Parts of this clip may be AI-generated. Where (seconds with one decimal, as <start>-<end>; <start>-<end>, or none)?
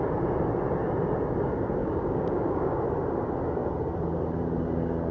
1.8-2.8